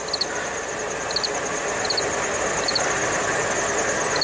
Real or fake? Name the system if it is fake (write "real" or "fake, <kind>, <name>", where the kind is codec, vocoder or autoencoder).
real